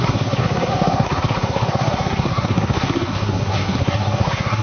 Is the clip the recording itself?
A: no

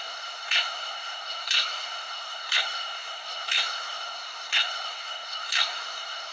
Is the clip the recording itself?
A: no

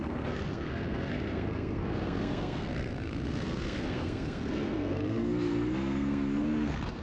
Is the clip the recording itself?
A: no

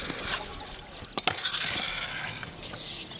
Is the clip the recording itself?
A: yes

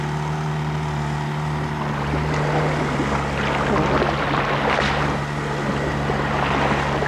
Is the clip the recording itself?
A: yes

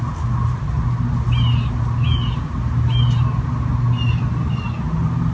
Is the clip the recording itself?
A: yes